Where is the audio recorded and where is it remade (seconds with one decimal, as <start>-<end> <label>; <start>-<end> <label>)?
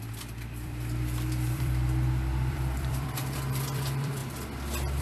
0.0-4.2 remade; 4.2-5.0 recorded